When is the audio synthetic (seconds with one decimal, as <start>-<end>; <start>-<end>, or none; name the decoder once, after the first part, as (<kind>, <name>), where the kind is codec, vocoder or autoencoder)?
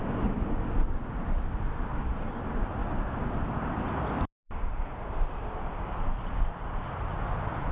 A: none